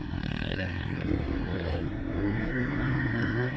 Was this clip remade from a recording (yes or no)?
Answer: yes